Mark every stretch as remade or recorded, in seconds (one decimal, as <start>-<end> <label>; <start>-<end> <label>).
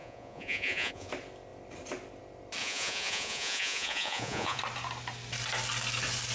0.0-1.1 remade; 1.1-2.6 recorded; 2.6-4.6 remade; 4.6-6.3 recorded